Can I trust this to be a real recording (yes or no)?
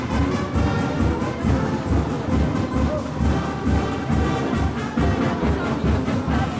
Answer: yes